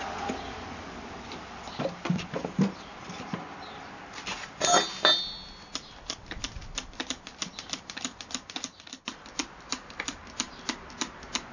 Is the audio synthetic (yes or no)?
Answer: no